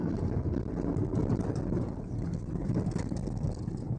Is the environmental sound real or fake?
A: real